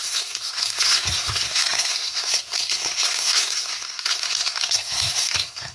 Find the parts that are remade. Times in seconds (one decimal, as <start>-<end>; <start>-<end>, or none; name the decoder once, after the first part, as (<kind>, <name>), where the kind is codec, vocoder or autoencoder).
0.0-5.7 (codec, SNAC)